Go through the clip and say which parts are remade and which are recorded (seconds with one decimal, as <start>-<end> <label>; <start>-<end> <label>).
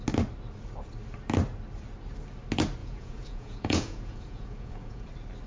0.0-2.8 recorded; 2.8-5.1 remade; 5.1-5.5 recorded